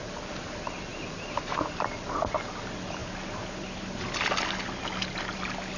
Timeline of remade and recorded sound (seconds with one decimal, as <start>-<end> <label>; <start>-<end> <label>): 0.0-5.8 recorded